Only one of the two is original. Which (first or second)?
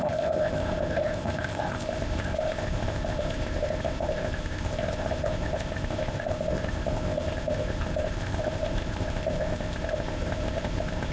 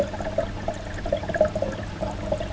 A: second